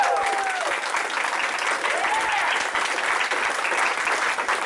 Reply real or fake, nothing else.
real